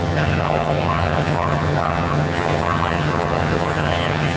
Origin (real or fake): fake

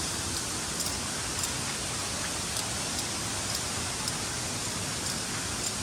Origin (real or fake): real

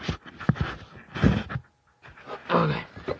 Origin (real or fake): real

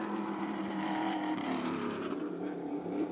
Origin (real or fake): fake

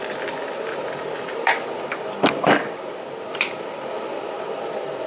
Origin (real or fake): fake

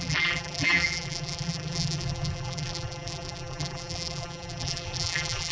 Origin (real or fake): fake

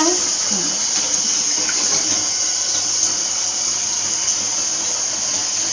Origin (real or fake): real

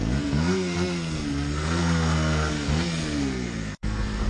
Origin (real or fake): fake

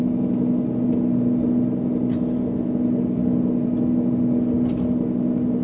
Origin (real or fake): real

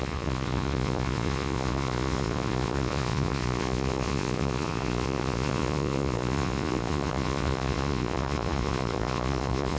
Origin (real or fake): fake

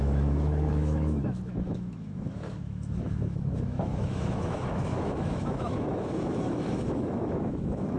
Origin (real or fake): fake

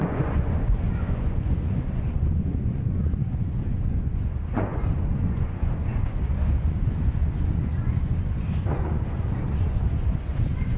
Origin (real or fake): fake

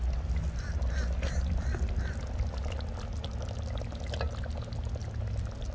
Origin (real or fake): real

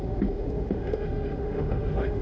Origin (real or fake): fake